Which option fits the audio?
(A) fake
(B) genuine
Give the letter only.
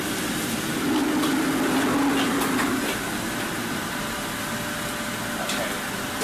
B